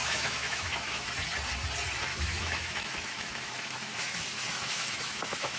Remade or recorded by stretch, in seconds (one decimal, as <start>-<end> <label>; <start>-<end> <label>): 0.0-1.1 remade; 1.1-2.1 recorded; 2.1-5.6 remade